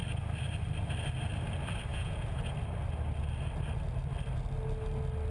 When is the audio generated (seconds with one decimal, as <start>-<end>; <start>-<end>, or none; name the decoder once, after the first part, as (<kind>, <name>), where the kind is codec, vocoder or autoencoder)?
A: 1.9-2.4 (vocoder, Vocos)